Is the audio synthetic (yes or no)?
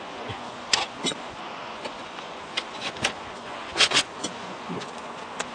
yes